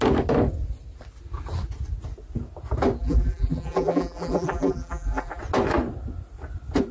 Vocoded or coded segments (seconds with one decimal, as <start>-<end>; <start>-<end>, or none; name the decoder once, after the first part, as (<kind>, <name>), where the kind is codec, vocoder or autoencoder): 3.0-5.4 (vocoder, BigVGAN v2)

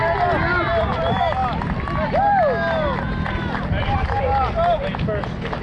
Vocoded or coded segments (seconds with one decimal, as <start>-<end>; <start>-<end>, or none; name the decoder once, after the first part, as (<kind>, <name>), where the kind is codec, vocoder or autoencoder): none

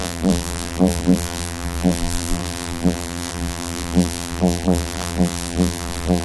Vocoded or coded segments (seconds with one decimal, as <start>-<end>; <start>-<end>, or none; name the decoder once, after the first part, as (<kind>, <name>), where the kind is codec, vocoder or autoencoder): 0.0-6.2 (vocoder, BigVGAN v2)

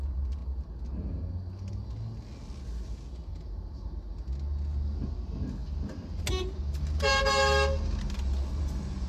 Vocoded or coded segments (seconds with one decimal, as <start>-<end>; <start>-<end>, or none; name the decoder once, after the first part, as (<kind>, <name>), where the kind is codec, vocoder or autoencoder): 3.3-3.9 (vocoder, BigVGAN v2)

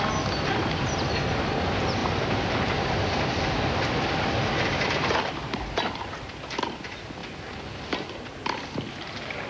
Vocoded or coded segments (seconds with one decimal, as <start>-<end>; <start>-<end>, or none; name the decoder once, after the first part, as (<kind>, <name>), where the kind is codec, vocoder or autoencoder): 2.0-6.3 (vocoder, BigVGAN v2)

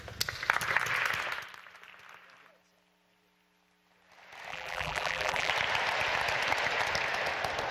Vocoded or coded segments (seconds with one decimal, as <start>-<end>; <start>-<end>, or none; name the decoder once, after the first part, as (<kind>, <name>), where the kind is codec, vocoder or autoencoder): 4.5-5.5 (vocoder, BigVGAN v2)